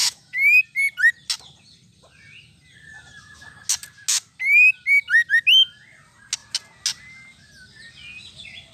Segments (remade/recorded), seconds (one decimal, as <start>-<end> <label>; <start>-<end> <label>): 0.0-0.6 remade; 0.6-8.7 recorded